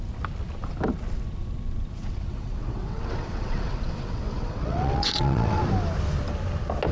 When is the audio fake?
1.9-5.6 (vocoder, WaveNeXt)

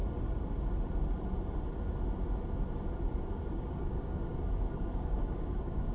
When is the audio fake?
3.5-5.9 (codec, DAC)

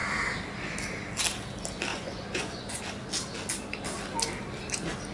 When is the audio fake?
1.9-2.8 (vocoder, Vocos)

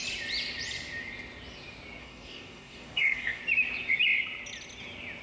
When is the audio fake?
2.0-3.4 (codec, DAC)

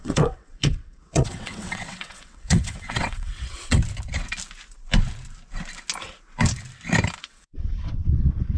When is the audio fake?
0.0-3.8 (vocoder, WaveNeXt); 7.2-8.6

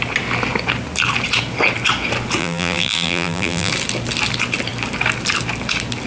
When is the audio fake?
2.4-3.7 (vocoder, BigVGAN v2)

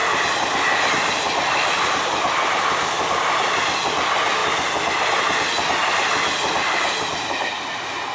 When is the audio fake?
none

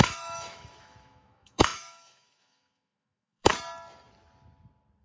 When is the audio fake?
0.0-3.5 (autoencoder, DAC-VAE)